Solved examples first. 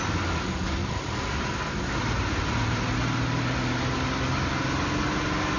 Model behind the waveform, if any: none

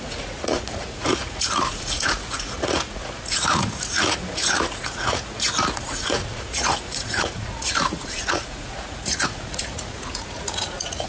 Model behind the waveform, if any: vocoder, Vocos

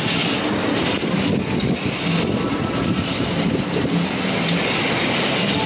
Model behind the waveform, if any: none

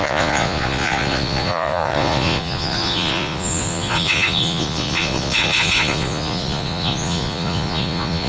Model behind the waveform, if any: vocoder, Vocos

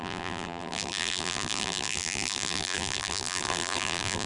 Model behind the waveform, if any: vocoder, BigVGAN v2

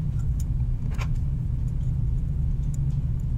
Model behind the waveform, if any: vocoder, Vocos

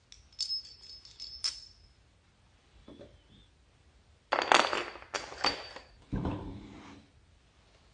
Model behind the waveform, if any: none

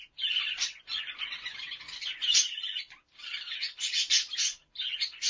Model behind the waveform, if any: none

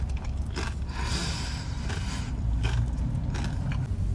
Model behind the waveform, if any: none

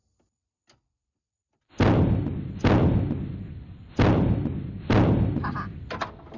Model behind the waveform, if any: vocoder, BigVGAN v2